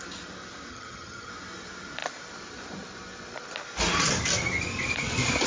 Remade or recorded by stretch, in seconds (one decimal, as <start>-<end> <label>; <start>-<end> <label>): 0.0-0.7 recorded; 0.7-1.3 remade; 1.3-5.5 recorded